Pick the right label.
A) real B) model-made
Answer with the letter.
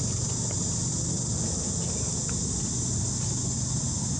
A